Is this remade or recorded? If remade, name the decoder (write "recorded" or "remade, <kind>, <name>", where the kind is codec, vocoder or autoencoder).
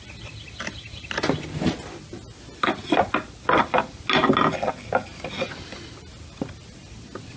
recorded